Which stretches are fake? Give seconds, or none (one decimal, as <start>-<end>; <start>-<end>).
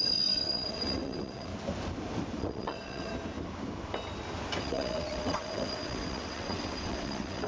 0.0-1.5; 2.4-3.1; 4.6-7.5